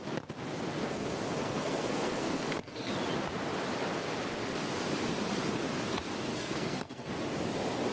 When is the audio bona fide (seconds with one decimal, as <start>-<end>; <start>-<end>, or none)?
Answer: 0.0-0.8; 2.9-6.3; 7.1-7.9